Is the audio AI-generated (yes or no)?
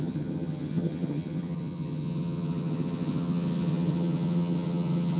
yes